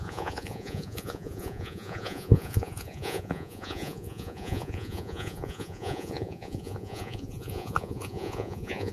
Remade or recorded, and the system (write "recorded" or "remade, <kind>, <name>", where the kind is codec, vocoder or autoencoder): remade, vocoder, Vocos